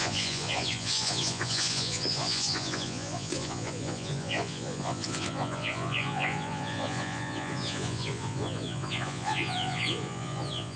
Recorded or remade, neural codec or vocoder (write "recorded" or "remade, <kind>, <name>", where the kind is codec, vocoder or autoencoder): remade, vocoder, Vocos